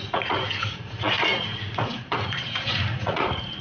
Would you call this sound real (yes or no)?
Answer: no